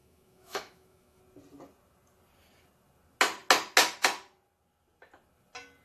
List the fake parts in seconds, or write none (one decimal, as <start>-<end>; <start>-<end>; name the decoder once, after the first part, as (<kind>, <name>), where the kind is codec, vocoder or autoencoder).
0.0-1.2 (autoencoder, DAC-VAE)